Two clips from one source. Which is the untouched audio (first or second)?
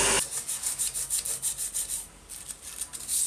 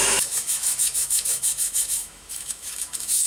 first